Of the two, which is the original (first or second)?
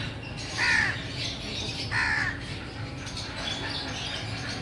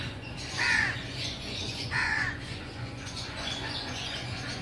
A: first